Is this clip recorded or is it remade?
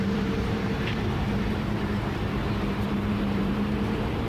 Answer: remade